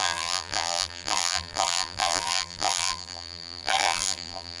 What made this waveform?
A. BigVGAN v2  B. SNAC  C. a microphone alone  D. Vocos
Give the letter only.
A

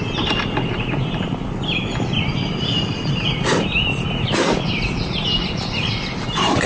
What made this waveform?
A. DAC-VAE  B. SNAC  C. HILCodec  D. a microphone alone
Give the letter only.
D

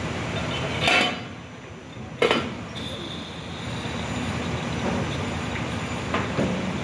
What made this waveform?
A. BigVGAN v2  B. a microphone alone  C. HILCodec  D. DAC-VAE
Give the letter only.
B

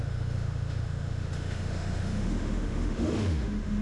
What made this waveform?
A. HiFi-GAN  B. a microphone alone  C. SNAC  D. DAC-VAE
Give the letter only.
D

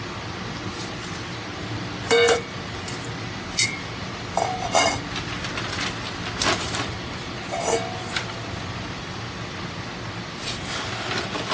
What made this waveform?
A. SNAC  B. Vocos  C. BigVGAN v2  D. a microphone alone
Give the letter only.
D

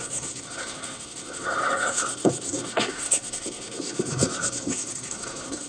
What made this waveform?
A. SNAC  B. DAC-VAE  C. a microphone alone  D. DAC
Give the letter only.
A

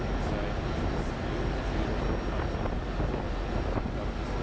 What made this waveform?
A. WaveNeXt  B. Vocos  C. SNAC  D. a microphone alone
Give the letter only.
D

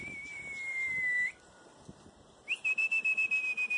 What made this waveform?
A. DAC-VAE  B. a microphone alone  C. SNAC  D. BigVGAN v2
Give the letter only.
D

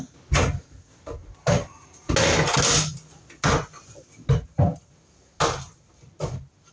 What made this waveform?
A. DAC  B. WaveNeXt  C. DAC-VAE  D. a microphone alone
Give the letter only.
D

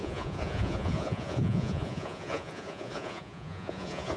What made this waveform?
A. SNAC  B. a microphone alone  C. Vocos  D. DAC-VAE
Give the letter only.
C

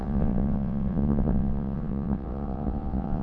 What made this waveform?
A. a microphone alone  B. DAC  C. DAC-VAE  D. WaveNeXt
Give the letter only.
D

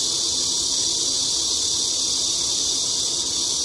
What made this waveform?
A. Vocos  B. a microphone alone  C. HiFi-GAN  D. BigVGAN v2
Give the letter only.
B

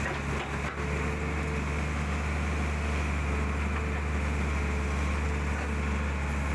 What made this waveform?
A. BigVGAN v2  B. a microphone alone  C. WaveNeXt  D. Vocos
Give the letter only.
B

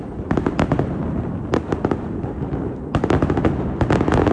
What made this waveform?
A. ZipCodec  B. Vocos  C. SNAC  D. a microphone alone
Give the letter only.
D